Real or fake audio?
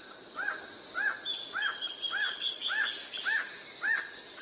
real